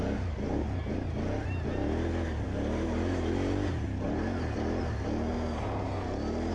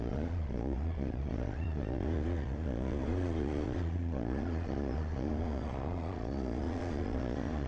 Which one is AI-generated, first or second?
second